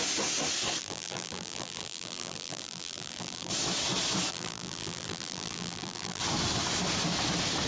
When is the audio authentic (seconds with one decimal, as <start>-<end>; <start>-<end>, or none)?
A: 0.0-0.8; 3.5-4.3; 6.2-7.7